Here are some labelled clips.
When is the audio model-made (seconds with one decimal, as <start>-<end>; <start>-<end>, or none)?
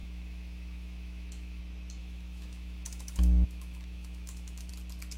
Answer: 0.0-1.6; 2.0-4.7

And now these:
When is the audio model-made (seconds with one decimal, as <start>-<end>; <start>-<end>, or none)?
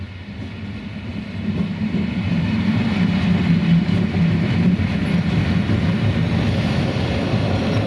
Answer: 1.7-4.0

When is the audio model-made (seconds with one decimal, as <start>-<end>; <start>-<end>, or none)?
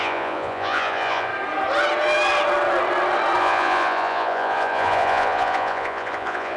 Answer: 0.0-1.3; 3.4-6.6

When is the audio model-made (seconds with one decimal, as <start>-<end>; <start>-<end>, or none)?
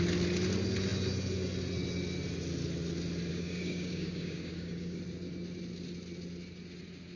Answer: 3.3-5.0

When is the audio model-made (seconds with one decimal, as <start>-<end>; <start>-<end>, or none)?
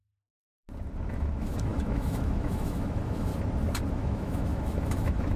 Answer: 0.0-0.4; 1.1-3.3; 3.9-5.4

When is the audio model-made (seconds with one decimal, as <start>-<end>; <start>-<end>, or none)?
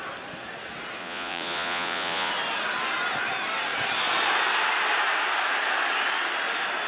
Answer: 1.0-2.3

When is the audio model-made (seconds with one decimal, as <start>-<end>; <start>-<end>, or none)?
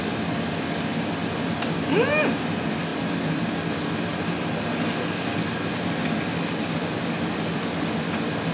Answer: none